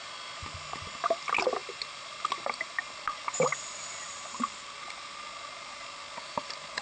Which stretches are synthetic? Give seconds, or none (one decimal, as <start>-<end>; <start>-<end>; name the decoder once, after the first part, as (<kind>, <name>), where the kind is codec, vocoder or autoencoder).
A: none